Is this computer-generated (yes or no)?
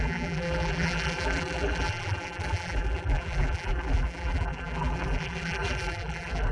yes